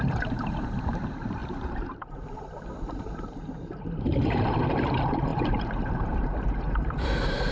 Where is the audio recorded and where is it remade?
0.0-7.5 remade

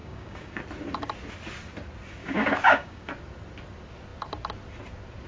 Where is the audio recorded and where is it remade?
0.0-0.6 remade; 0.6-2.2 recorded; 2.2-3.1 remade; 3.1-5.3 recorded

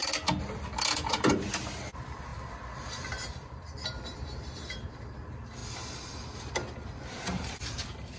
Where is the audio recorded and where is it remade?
0.0-8.2 recorded